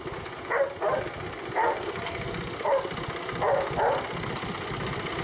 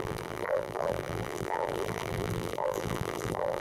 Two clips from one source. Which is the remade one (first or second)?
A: second